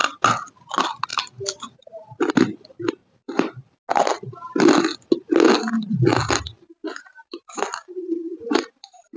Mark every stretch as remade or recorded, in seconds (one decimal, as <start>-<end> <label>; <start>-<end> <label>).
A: 0.0-1.1 recorded; 1.1-2.3 remade; 2.3-3.0 recorded; 3.0-3.6 remade; 3.6-6.6 recorded; 6.6-9.2 remade